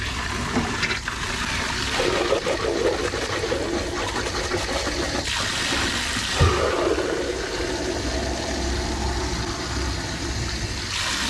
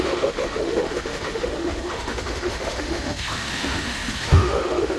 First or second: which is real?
first